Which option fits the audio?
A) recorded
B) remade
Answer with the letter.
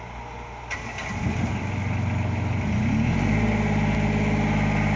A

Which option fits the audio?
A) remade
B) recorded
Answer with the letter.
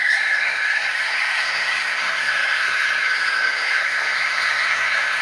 A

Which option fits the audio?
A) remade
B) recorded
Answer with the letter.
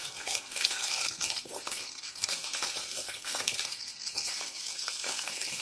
A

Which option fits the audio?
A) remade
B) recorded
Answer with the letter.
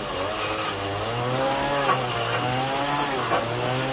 B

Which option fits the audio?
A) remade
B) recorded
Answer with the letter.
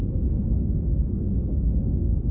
A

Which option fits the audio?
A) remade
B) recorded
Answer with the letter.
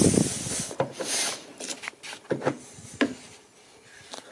B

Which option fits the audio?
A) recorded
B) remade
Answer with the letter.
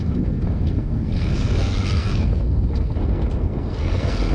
B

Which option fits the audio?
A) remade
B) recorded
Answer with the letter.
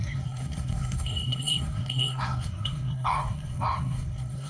A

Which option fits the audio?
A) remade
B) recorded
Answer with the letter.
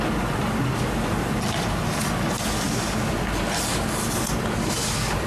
B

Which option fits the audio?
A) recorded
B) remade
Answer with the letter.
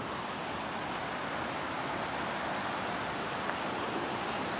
A